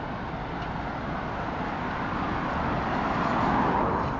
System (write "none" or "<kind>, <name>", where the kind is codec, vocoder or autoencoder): none